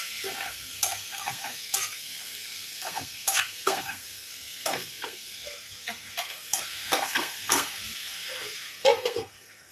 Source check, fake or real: fake